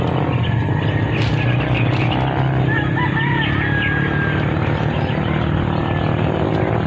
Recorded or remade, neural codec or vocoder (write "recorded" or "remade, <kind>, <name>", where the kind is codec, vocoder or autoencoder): recorded